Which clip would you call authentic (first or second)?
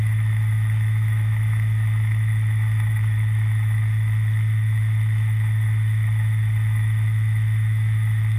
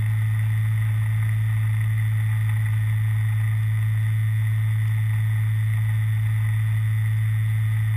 second